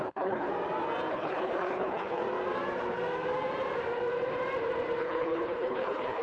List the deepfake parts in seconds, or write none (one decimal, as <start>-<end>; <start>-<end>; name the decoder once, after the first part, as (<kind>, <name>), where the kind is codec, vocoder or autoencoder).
0.0-0.5 (codec, HILCodec); 1.1-2.2; 5.0-6.2